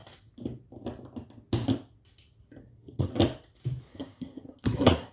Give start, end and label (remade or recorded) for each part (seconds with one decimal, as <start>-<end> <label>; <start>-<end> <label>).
0.0-2.6 recorded; 2.6-3.1 remade; 3.1-3.8 recorded; 3.8-5.1 remade